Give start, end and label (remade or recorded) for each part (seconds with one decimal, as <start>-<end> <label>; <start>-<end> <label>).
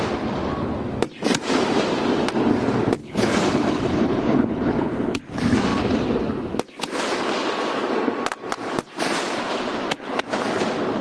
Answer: 0.0-3.0 recorded; 3.0-5.2 remade; 5.2-11.0 recorded